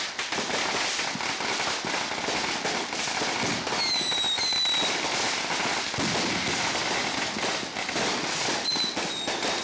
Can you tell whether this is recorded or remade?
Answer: recorded